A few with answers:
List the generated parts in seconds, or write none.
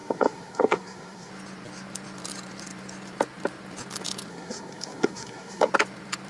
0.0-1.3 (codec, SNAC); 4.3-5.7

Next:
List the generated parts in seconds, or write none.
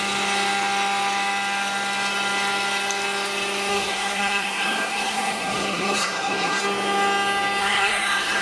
3.7-6.6 (codec, SNAC); 7.6-8.4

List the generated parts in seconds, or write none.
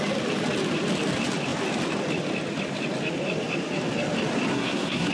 4.5-5.1 (codec, SNAC)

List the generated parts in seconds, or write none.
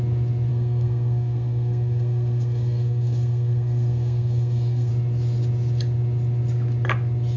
0.5-4.9 (codec, SNAC)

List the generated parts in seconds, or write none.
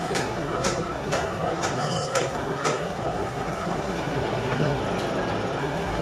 0.0-4.8 (codec, SNAC); 5.6-6.0